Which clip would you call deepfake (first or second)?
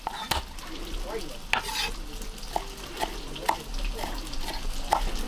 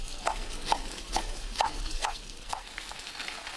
second